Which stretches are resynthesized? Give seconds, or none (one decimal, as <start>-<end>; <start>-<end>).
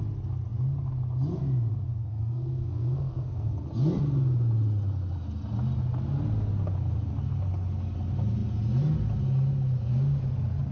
2.0-3.5